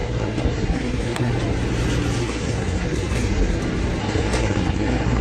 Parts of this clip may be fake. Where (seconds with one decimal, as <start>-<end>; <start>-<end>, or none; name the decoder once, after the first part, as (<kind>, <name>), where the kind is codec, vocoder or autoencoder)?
0.0-1.3 (codec, SNAC); 2.2-3.6; 4.0-5.2